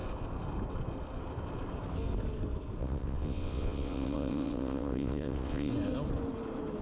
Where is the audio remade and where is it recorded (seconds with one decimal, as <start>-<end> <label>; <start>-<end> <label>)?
0.0-2.8 recorded; 2.8-5.7 remade; 5.7-6.8 recorded